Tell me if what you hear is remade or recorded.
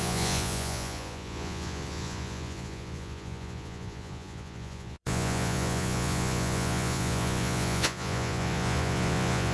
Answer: remade